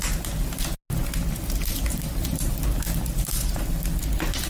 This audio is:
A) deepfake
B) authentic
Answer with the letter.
B